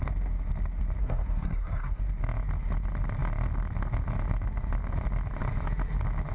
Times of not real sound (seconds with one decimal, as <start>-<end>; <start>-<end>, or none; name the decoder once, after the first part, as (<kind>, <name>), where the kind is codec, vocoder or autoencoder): 1.0-2.0 (codec, SNAC)